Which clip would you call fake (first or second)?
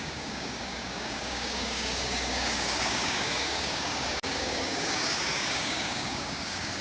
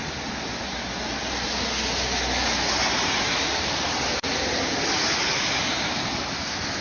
first